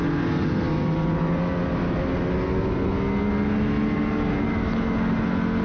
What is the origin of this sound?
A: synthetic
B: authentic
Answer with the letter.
B